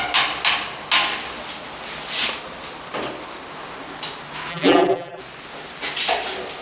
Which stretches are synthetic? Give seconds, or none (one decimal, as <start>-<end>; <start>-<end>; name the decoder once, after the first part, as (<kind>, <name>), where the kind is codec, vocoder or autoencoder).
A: 4.5-5.2 (vocoder, BigVGAN v2)